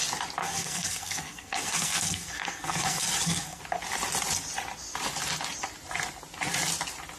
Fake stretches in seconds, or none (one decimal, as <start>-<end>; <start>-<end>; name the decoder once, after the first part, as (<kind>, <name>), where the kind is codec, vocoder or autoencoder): 0.4-3.6 (codec, SNAC)